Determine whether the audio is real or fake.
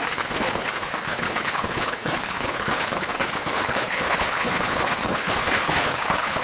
fake